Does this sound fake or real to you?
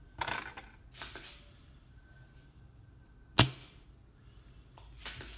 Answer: real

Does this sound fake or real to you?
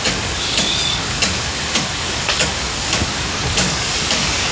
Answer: fake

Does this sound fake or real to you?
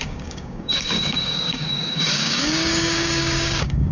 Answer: fake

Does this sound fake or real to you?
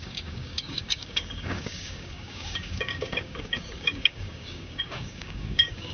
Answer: fake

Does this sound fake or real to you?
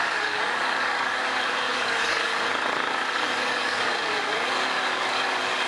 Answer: fake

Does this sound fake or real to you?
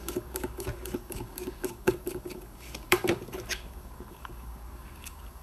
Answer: fake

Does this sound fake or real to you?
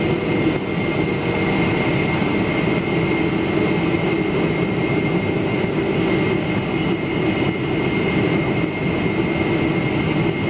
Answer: real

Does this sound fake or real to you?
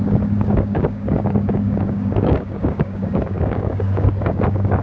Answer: fake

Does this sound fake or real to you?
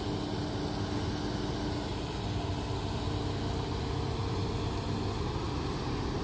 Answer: real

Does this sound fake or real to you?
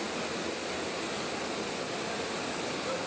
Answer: real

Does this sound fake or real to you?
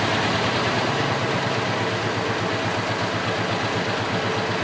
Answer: real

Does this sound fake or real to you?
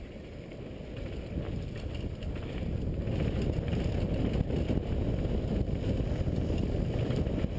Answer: real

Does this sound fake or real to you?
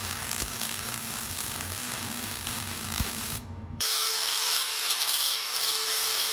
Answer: fake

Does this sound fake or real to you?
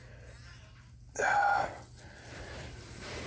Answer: real